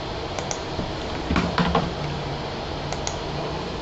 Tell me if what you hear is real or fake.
real